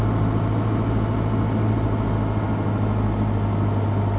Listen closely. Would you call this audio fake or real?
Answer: real